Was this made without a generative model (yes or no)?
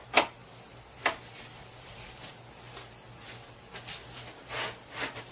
yes